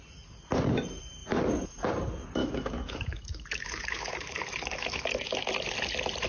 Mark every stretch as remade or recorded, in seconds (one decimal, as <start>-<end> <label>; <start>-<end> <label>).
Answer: 0.0-2.4 recorded; 2.4-5.5 remade; 5.5-6.3 recorded